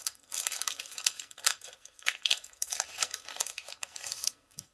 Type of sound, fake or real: fake